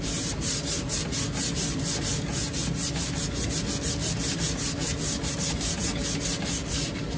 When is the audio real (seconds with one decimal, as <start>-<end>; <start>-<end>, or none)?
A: 1.0-5.3; 6.0-6.7